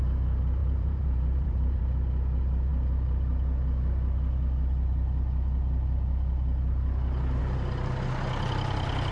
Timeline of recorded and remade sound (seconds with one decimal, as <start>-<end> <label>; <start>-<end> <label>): 0.0-0.6 recorded; 0.6-1.8 remade; 1.8-9.1 recorded